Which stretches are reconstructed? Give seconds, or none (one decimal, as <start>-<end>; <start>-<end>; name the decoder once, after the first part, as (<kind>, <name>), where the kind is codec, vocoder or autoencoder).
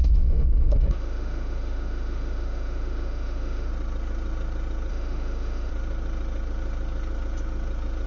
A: 0.0-3.7 (autoencoder, DAC-VAE); 4.9-5.7